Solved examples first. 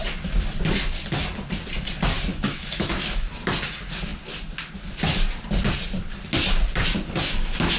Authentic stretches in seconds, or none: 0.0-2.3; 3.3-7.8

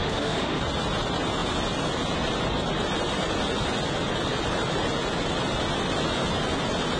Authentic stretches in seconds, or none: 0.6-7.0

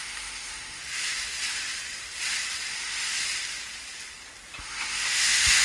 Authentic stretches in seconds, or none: 0.8-2.7; 3.1-4.6

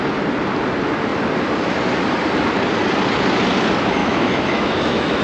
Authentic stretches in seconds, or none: 0.0-4.0